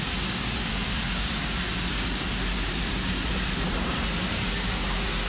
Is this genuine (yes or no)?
yes